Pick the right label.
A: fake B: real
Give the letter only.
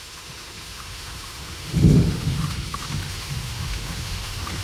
A